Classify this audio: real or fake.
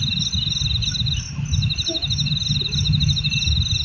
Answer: real